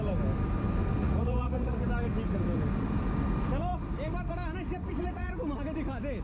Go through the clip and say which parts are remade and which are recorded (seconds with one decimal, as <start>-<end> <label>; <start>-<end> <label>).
0.0-1.0 recorded; 1.0-1.9 remade; 1.9-4.8 recorded; 4.8-5.3 remade; 5.3-6.2 recorded